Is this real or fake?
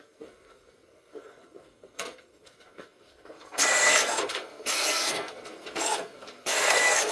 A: fake